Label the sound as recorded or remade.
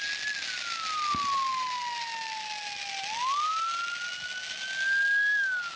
recorded